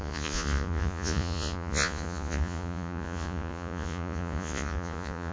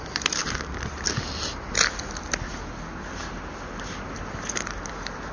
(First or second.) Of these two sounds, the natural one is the second